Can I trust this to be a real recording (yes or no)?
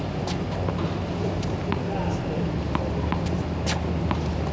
yes